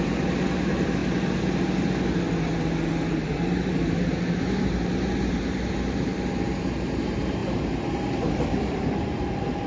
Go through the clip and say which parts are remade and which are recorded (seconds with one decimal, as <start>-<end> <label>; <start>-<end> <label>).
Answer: 0.0-1.0 remade; 1.0-3.1 recorded; 3.1-9.7 remade